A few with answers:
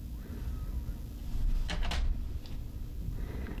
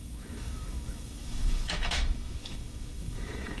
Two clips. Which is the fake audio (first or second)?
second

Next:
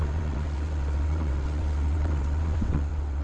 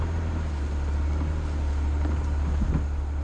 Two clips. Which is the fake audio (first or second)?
first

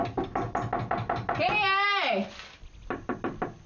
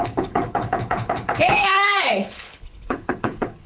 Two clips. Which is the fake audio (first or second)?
second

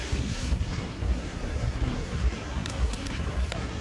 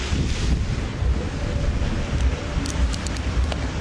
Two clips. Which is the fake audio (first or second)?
first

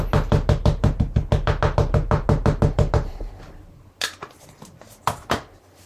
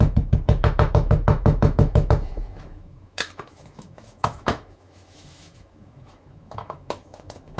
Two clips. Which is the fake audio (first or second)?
second